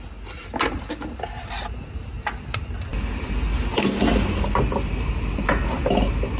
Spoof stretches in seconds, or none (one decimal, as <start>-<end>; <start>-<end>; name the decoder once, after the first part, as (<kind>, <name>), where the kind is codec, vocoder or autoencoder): none